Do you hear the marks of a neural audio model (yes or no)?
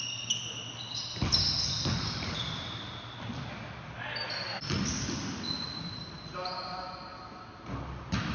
no